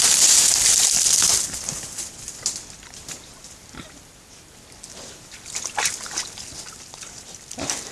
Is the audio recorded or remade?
recorded